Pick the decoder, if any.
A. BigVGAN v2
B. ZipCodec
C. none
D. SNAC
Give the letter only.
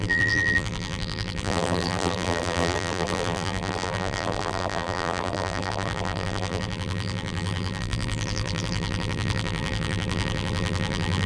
A